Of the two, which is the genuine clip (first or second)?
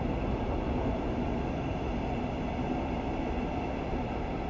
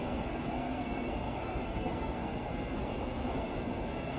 first